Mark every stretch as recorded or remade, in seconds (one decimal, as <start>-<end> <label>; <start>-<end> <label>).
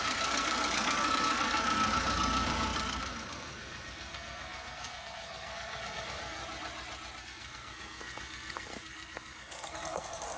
0.0-6.4 remade; 6.4-7.2 recorded; 7.2-10.4 remade